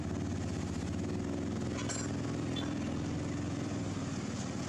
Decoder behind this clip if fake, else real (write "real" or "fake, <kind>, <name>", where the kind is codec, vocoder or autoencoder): real